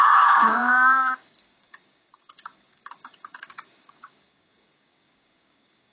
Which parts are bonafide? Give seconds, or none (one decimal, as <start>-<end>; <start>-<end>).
none